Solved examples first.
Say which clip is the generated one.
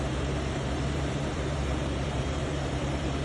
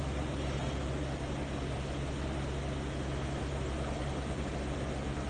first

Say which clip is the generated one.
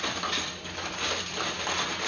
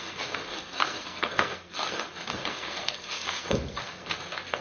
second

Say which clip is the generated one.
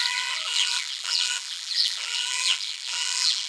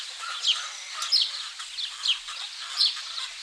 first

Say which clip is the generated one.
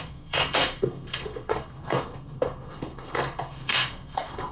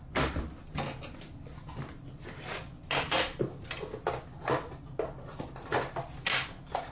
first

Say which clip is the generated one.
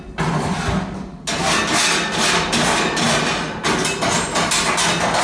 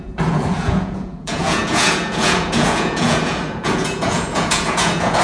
second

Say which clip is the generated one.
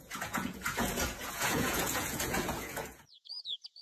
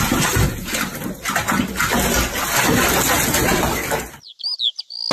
first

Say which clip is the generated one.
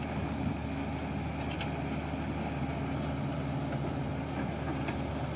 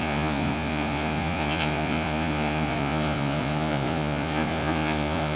second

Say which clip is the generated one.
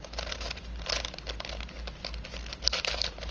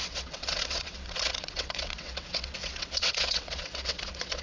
second